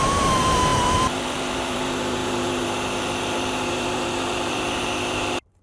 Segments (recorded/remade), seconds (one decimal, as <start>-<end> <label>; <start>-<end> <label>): 0.0-5.6 remade